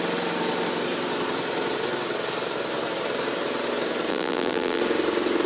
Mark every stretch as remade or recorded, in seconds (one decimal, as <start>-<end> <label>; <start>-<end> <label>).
0.0-4.1 recorded; 4.1-4.8 remade; 4.8-5.5 recorded